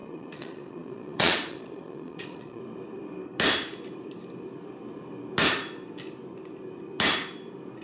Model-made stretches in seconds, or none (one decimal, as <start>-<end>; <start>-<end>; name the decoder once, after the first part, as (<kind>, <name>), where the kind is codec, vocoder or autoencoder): 0.0-2.6 (vocoder, Vocos)